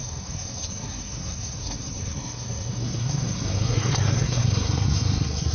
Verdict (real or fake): fake